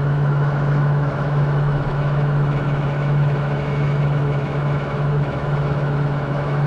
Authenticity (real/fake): fake